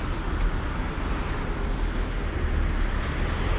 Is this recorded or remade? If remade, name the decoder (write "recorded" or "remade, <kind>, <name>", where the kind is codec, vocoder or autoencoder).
recorded